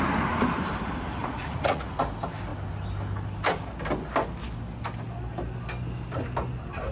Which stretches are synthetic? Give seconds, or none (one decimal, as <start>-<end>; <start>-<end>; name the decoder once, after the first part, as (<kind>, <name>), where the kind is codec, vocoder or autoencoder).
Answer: 1.2-1.9 (vocoder, Vocos)